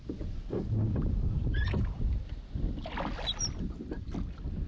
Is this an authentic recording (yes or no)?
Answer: yes